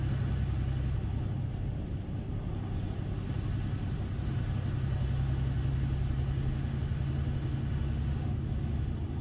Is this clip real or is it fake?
real